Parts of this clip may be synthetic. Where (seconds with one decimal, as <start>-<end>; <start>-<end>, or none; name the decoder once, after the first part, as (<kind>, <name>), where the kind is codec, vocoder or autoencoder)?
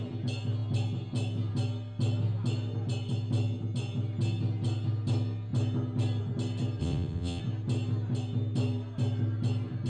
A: 6.8-7.4 (vocoder, WaveNeXt)